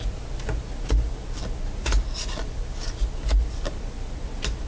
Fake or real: real